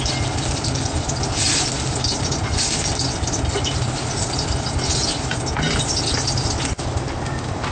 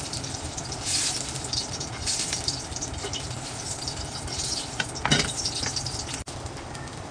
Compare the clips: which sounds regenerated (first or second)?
second